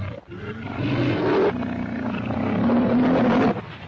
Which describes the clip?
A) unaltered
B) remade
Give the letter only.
A